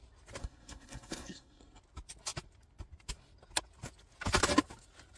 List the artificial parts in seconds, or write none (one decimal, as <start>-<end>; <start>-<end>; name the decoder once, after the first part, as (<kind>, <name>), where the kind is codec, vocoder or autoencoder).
0.4-1.8 (codec, SNAC)